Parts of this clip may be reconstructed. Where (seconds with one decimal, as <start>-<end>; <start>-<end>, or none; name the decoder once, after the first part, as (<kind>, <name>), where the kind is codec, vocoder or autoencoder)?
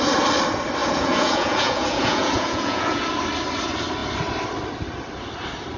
0.8-3.2 (vocoder, Vocos)